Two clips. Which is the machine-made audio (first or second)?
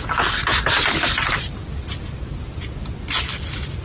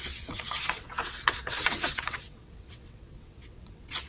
second